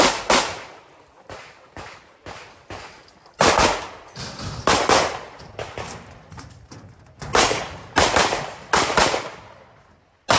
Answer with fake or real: real